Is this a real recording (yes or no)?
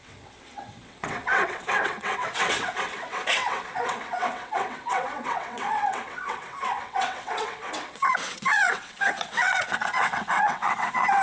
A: no